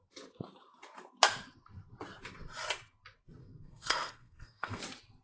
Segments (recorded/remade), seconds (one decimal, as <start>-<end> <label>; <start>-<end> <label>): 0.0-3.4 recorded; 3.4-4.8 remade; 4.8-5.2 recorded